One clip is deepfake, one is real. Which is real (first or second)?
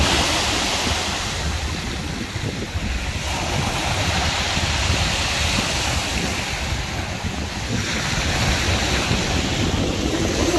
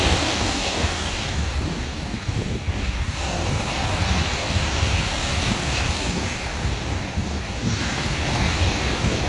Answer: first